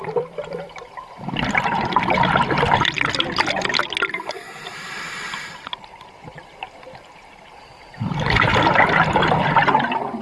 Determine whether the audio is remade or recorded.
remade